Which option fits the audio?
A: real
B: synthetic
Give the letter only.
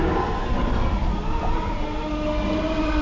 A